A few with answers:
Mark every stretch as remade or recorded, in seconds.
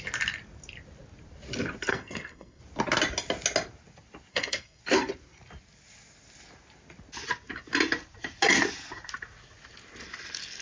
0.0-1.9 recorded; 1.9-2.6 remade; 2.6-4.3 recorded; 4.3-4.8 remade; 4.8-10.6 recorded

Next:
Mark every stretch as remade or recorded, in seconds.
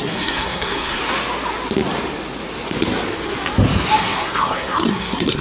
0.0-1.0 remade; 1.0-4.0 recorded; 4.0-5.4 remade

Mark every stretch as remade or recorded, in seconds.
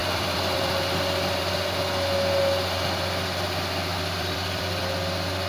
0.0-1.4 remade; 1.4-3.9 recorded; 3.9-4.8 remade; 4.8-5.5 recorded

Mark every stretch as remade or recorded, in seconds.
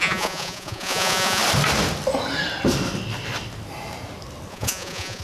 0.0-1.4 remade; 1.4-4.5 recorded; 4.5-5.2 remade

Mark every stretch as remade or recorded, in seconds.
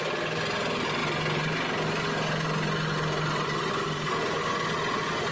0.0-5.3 recorded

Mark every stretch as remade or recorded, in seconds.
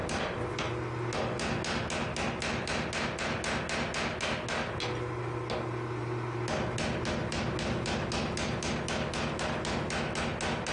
0.0-10.7 recorded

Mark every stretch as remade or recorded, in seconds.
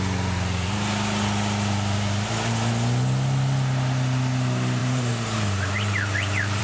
0.0-4.8 recorded; 4.8-6.6 remade